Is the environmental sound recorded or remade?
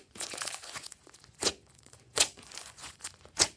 remade